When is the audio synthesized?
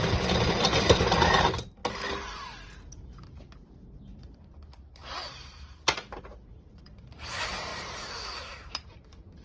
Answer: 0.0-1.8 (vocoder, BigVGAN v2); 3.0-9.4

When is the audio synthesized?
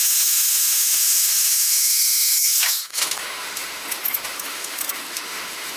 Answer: 0.0-5.8 (autoencoder, DAC-VAE)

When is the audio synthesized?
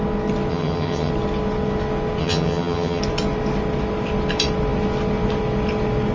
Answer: 0.5-1.1 (vocoder, HiFi-GAN); 2.2-3.0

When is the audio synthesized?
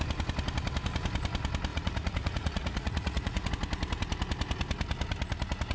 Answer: 1.7-3.5 (vocoder, Vocos)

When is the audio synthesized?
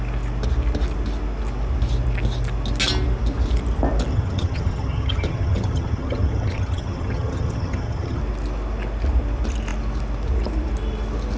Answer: 4.1-8.2 (vocoder, HiFi-GAN)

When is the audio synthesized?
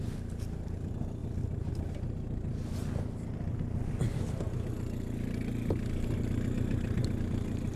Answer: none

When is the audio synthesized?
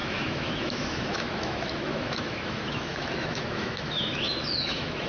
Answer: 0.0-5.1 (autoencoder, DAC-VAE)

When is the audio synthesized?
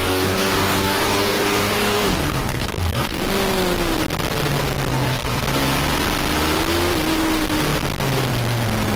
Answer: 0.0-3.2 (codec, DAC); 4.9-5.4